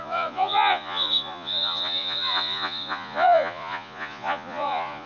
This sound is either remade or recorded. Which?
remade